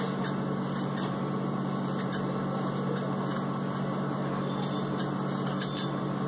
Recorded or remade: recorded